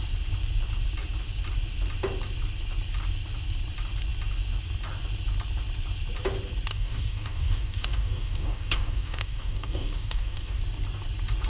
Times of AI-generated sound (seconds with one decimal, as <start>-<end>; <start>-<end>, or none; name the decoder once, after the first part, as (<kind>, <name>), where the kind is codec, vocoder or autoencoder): 6.7-10.6 (codec, DAC)